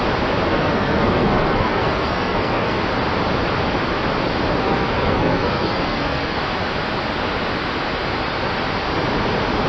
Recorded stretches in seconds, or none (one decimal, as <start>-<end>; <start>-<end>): 0.0-0.5; 2.8-4.6; 6.4-9.7

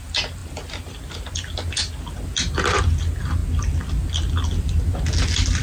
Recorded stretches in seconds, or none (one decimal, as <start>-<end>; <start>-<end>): 0.0-5.6

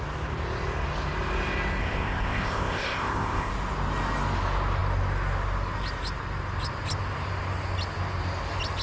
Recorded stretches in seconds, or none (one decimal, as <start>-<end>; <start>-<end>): 0.0-1.8; 3.5-8.8

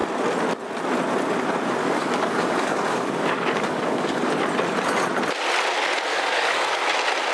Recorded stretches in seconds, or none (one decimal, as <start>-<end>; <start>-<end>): 0.0-1.8; 4.3-6.1; 6.8-7.3

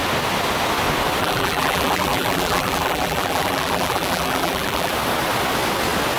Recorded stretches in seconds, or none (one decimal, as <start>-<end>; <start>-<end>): 0.0-1.2; 4.9-6.2